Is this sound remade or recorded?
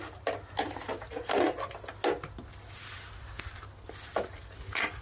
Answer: recorded